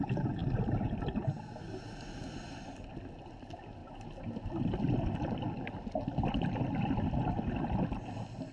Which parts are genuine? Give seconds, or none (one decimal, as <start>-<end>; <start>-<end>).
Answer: 0.0-0.4; 1.6-3.8; 7.2-8.5